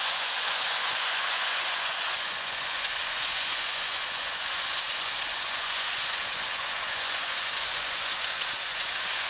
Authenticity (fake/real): fake